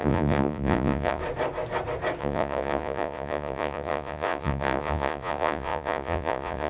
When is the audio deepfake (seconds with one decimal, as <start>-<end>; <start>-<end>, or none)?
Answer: 0.0-1.2; 2.2-6.7